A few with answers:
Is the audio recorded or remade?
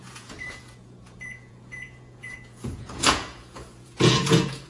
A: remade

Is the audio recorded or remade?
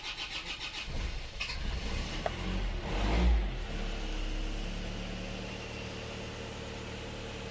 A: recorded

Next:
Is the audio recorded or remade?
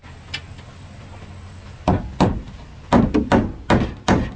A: recorded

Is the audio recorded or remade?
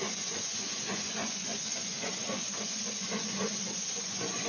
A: remade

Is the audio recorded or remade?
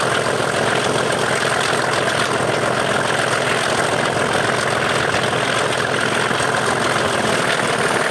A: recorded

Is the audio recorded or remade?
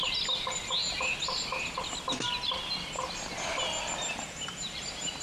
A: recorded